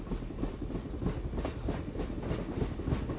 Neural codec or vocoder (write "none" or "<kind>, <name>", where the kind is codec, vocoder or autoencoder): none